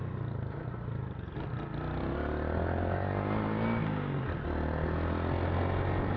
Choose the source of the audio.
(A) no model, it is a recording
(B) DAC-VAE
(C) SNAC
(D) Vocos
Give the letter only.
A